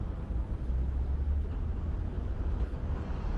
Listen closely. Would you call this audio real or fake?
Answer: real